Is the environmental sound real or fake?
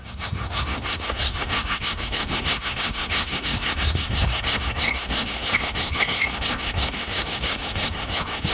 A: fake